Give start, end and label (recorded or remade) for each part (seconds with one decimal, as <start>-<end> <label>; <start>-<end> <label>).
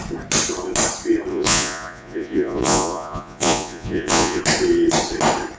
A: 0.0-1.3 recorded; 1.3-4.4 remade; 4.4-5.6 recorded